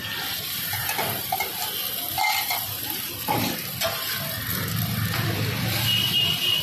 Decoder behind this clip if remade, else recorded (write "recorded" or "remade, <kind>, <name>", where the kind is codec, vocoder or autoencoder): remade, vocoder, BigVGAN v2